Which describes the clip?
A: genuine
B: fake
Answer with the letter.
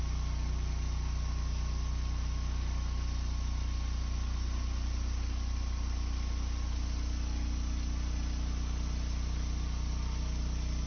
A